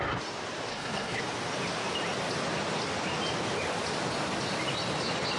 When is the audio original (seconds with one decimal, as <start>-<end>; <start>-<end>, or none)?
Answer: 0.0-0.7; 1.2-5.4